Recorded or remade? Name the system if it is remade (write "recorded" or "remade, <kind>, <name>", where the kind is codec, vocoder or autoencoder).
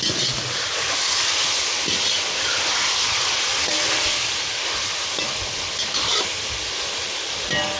recorded